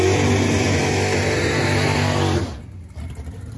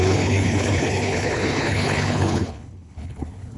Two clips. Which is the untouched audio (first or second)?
first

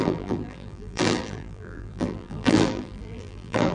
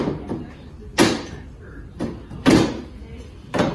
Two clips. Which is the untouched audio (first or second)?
second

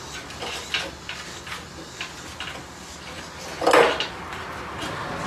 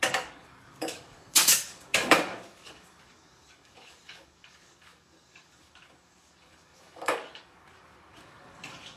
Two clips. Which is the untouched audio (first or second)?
first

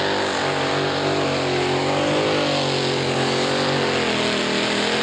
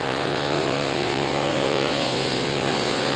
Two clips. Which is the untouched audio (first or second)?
first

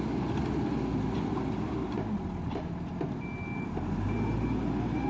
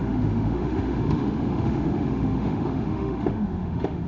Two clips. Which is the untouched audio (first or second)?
first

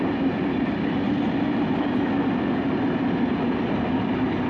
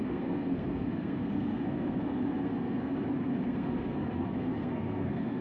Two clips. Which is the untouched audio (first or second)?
first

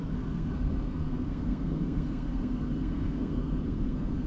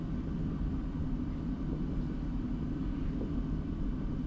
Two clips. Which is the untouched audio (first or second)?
second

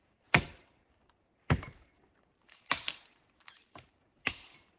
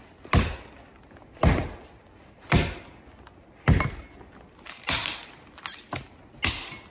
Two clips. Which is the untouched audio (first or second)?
second